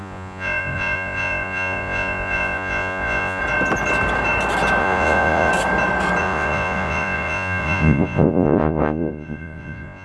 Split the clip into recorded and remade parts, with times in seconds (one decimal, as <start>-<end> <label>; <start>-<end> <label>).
0.0-3.4 remade; 3.4-4.8 recorded; 4.8-5.5 remade; 5.5-6.2 recorded; 6.2-10.0 remade